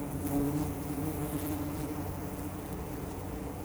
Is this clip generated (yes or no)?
no